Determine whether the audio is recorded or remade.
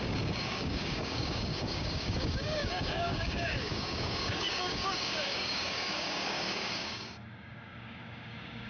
remade